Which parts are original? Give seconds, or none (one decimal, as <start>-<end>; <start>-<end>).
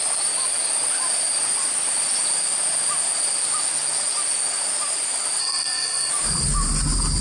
0.0-5.4; 6.1-7.2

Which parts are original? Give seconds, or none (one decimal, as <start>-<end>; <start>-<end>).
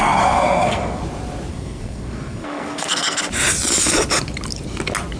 1.0-1.5; 3.2-5.2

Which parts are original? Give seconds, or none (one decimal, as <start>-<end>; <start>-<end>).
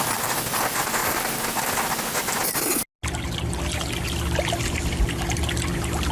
0.0-6.1